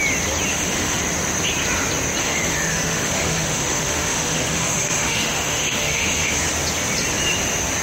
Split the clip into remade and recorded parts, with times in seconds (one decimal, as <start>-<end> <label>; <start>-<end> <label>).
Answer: 0.0-0.5 recorded; 0.5-1.0 remade; 1.0-2.2 recorded; 2.2-6.4 remade; 6.4-7.8 recorded